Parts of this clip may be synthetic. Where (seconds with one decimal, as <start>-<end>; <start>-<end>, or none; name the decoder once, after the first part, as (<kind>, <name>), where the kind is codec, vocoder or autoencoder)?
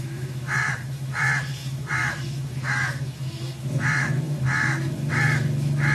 0.0-5.9 (autoencoder, DAC-VAE)